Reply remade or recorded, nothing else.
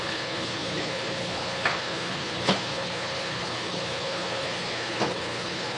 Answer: remade